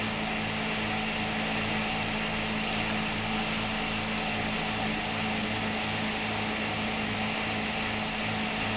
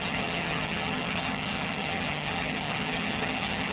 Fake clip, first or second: second